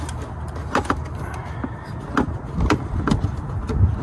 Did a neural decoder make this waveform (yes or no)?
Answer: no